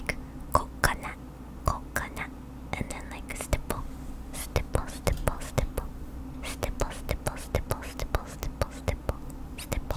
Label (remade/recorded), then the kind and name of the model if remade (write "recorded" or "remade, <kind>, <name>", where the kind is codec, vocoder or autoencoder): recorded